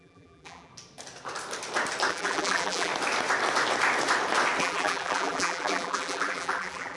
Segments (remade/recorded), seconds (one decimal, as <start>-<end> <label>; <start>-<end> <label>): 0.0-0.7 remade; 0.7-2.1 recorded; 2.1-2.9 remade; 2.9-4.6 recorded; 4.6-7.0 remade